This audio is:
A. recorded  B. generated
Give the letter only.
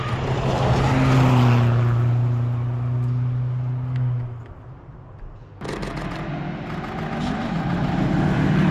A